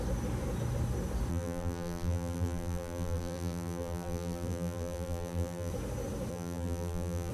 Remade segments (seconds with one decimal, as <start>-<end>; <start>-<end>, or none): 1.3-5.7; 6.3-7.3